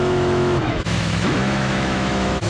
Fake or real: fake